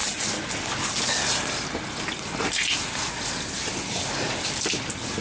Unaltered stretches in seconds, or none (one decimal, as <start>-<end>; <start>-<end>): 0.0-5.2